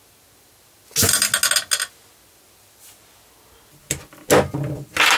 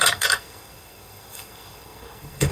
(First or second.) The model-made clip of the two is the second